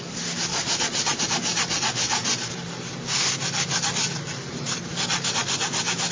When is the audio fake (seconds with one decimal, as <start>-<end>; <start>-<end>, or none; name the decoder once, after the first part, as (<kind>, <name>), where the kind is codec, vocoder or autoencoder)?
0.5-1.2 (vocoder, Vocos)